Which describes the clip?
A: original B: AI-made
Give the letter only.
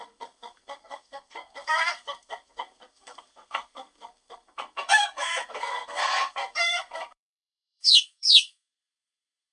B